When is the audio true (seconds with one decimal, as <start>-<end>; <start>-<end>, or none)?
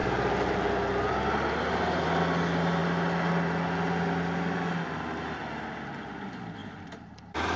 0.0-6.6